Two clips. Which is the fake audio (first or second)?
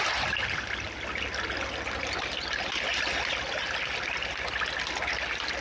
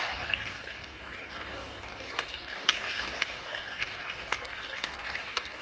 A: second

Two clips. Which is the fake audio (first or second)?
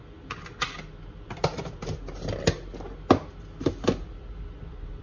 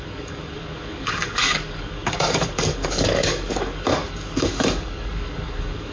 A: second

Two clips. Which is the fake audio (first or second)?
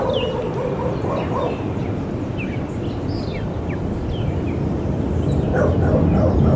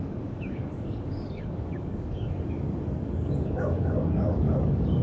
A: second